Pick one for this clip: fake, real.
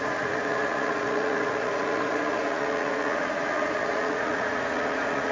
fake